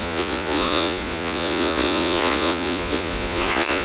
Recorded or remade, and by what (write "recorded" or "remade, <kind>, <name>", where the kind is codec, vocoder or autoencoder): remade, vocoder, Vocos